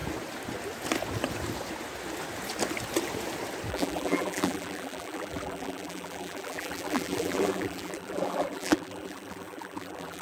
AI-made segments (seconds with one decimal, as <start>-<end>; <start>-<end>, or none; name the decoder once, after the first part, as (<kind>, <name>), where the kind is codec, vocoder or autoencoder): 3.7-10.2 (vocoder, BigVGAN v2)